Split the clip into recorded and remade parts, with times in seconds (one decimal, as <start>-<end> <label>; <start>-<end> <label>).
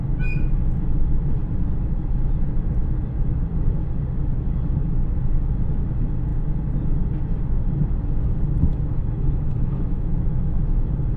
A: 0.0-8.7 recorded; 8.7-10.6 remade; 10.6-11.2 recorded